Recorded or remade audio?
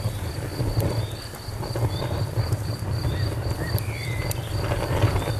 recorded